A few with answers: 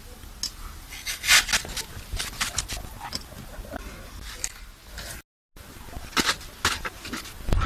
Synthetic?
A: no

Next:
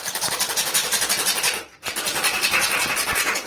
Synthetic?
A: no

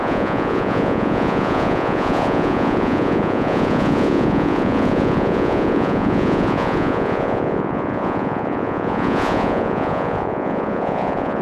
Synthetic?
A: yes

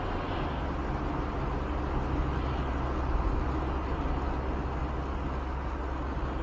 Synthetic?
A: no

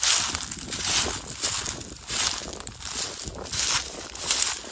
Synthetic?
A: no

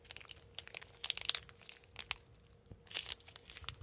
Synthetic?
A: no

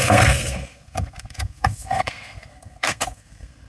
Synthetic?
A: yes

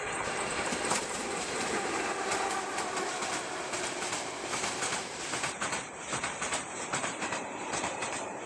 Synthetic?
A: yes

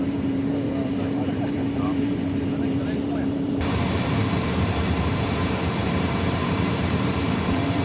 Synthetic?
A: yes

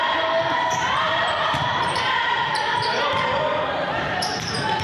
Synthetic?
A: yes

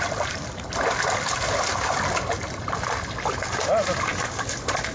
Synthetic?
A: no